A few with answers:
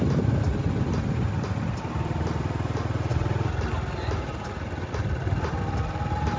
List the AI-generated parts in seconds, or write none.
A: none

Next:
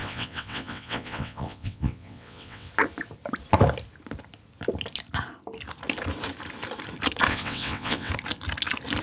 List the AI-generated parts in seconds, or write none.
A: 0.0-2.7 (vocoder, WaveNeXt); 7.3-8.1

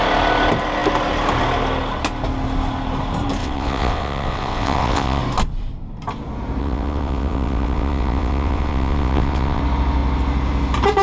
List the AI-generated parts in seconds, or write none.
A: 3.4-5.2 (vocoder, WaveNeXt); 6.6-9.6

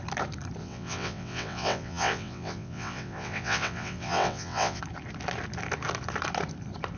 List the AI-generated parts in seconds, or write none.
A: 0.6-4.8 (vocoder, WaveNeXt)